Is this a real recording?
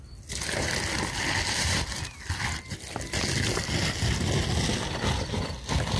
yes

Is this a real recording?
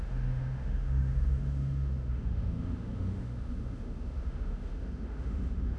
no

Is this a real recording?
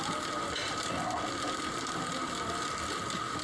yes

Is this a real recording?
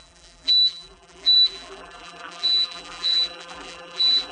no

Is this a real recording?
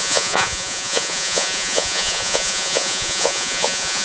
no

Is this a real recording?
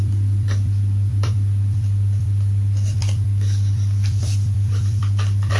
no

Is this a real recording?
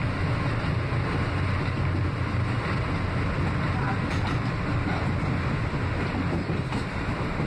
yes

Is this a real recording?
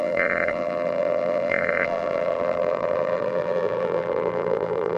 no